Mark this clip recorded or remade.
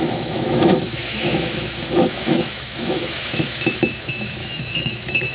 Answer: remade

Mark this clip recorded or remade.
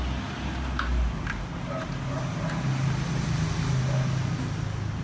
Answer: recorded